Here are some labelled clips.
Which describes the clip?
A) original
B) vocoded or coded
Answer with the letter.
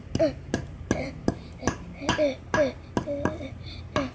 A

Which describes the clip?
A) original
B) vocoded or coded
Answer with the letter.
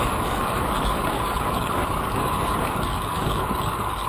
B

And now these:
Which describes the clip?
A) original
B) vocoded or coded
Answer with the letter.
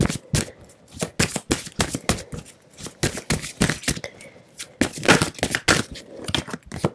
A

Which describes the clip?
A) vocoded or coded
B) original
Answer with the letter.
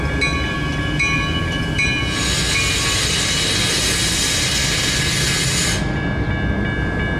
B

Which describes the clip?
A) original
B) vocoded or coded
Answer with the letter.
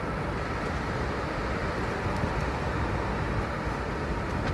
A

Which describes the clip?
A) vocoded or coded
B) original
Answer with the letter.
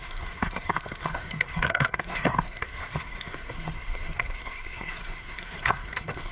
A